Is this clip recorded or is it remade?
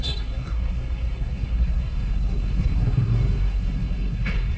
remade